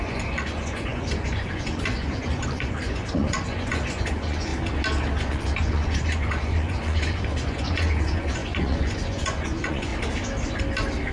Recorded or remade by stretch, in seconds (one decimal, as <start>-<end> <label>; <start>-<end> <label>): 0.0-4.5 remade; 4.5-5.2 recorded; 5.2-9.9 remade; 9.9-11.1 recorded